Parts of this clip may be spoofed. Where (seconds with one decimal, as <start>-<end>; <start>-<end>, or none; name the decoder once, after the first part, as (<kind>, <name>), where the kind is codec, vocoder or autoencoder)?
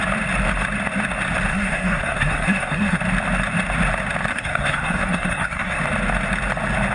1.5-3.0 (codec, SNAC); 4.3-5.8